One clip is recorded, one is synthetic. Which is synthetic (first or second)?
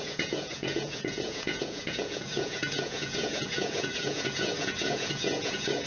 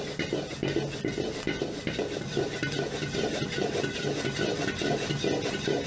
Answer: first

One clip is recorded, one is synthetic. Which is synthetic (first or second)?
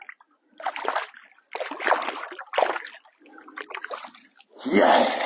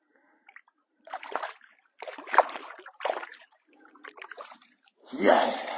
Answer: second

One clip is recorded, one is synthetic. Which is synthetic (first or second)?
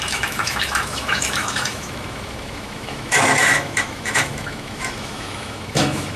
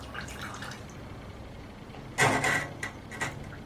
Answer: first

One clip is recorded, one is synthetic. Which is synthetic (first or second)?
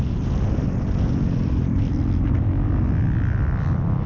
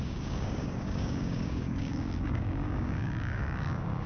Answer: second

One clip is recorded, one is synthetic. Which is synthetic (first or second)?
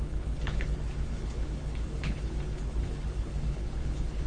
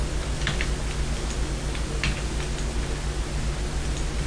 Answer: first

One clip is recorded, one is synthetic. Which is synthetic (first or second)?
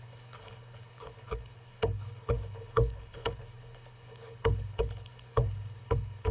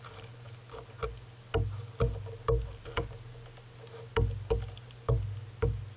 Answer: first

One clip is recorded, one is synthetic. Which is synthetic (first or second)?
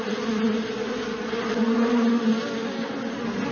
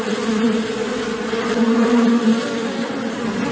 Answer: second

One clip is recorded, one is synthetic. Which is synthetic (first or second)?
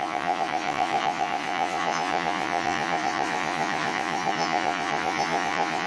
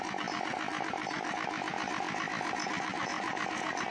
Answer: first